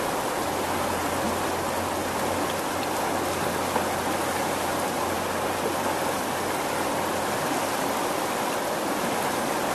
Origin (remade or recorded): recorded